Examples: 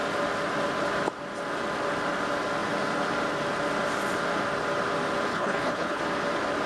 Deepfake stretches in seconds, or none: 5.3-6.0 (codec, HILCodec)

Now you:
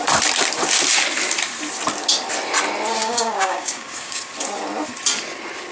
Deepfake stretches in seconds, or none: 3.0-4.3 (codec, DAC)

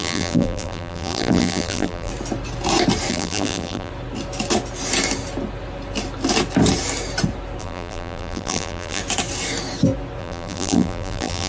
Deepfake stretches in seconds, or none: 0.0-2.1 (vocoder, BigVGAN v2); 3.1-3.9; 7.6-9.0; 10.2-11.5

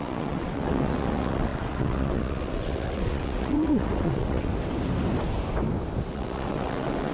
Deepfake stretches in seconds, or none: 0.0-4.5 (vocoder, WaveNeXt); 6.1-7.1